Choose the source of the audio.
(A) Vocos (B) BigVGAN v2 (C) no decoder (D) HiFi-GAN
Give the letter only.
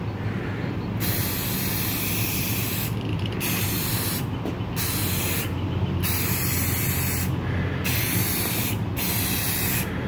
C